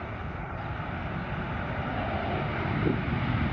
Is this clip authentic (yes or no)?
yes